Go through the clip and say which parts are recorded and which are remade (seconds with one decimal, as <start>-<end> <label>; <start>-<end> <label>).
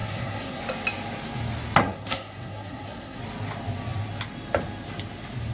0.0-0.6 remade; 0.6-1.8 recorded; 1.8-3.2 remade; 3.2-5.5 recorded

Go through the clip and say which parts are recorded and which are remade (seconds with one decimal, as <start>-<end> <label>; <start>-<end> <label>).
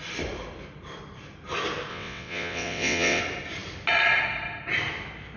0.0-1.9 recorded; 1.9-3.2 remade; 3.2-5.4 recorded